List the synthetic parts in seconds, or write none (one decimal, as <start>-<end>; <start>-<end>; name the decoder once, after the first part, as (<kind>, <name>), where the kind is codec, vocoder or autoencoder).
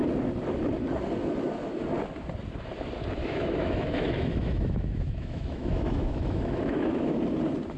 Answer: 3.2-7.2 (autoencoder, DAC-VAE)